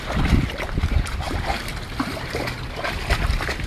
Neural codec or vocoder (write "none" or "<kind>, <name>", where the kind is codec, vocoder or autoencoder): none